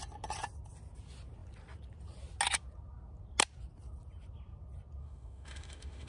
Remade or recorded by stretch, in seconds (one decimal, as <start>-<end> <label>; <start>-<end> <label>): 0.0-5.0 recorded; 5.0-6.1 remade

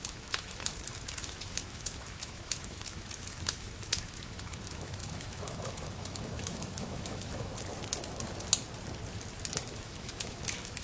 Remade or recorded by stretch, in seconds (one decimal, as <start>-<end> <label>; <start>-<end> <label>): 0.0-7.5 remade; 7.5-9.5 recorded; 9.5-10.8 remade